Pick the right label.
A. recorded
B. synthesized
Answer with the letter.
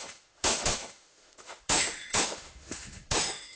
B